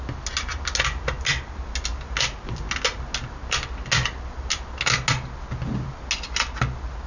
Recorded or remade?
recorded